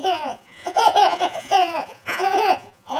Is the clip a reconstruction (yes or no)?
yes